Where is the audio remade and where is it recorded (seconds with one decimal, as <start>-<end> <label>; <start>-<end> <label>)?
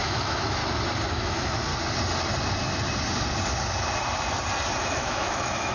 0.0-0.6 remade; 0.6-1.1 recorded; 1.1-1.7 remade; 1.7-4.8 recorded; 4.8-5.7 remade